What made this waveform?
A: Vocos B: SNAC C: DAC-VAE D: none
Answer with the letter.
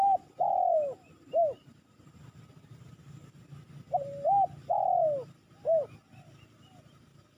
D